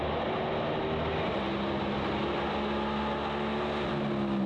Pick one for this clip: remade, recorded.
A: recorded